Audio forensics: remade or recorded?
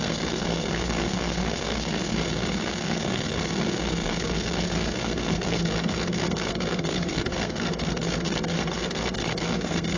remade